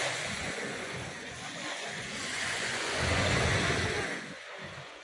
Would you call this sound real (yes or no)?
no